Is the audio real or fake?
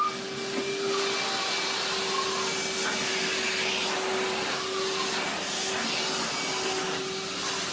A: real